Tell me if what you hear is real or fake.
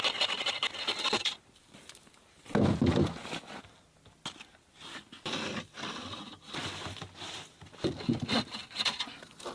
real